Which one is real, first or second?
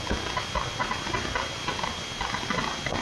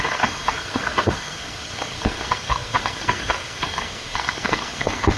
first